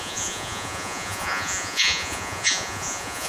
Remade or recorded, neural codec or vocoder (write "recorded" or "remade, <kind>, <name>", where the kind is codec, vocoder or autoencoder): remade, vocoder, Vocos